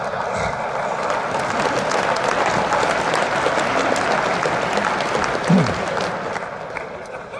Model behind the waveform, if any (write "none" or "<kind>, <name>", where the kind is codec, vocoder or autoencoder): none